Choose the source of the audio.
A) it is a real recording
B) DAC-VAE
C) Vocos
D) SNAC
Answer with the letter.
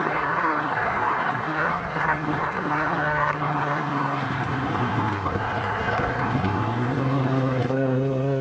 D